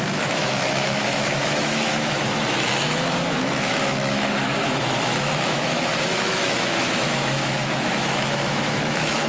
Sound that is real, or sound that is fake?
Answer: fake